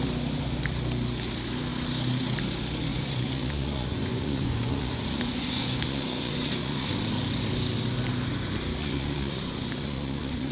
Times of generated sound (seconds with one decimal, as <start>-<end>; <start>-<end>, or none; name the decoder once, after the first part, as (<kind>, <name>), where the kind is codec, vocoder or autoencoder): 2.9-6.9 (vocoder, Vocos); 8.8-10.5